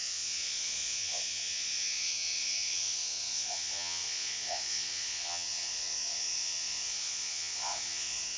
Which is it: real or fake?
fake